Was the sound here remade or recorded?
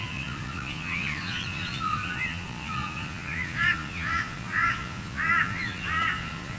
remade